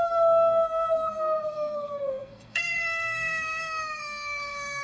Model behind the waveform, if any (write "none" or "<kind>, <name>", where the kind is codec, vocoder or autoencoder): codec, SNAC